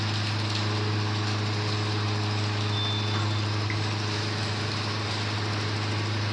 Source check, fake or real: real